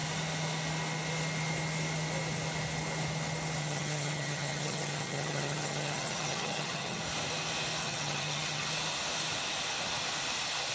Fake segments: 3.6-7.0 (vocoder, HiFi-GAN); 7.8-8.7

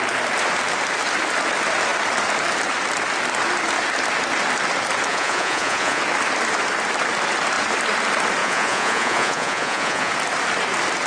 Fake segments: 5.1-6.0 (vocoder, Vocos); 8.4-10.1

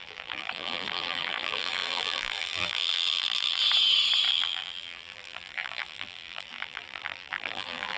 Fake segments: 0.0-3.6 (vocoder, BigVGAN v2); 4.3-8.0